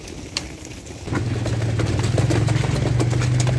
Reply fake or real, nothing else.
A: real